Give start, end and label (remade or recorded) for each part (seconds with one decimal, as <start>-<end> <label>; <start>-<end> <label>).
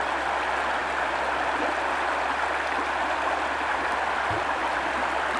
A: 0.0-4.6 recorded; 4.6-5.4 remade